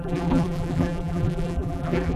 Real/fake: fake